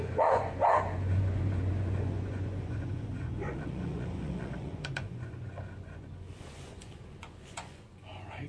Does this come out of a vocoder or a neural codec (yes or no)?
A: yes